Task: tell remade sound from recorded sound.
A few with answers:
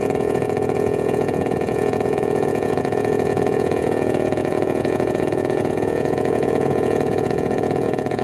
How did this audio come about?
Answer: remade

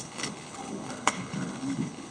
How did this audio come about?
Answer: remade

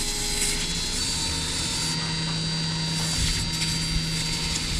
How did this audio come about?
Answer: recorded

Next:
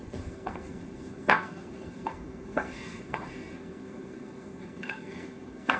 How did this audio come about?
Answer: remade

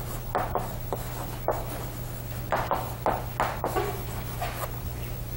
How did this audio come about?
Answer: recorded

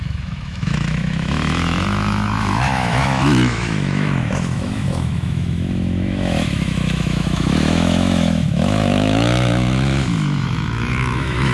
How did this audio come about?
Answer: remade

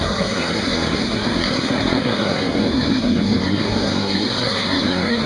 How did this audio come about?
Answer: remade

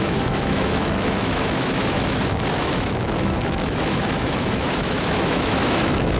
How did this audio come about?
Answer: remade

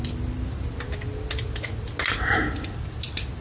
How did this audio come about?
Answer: recorded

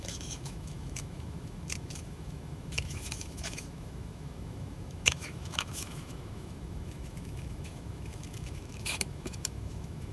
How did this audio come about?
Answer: remade